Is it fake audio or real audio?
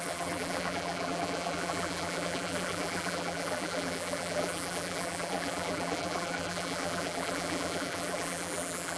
fake